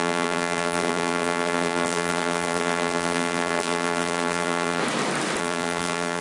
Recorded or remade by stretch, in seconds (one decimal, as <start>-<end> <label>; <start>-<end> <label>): 0.0-4.8 remade; 4.8-5.4 recorded; 5.4-6.2 remade